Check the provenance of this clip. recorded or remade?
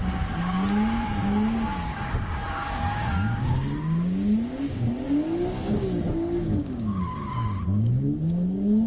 remade